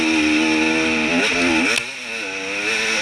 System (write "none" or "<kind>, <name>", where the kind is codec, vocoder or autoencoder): none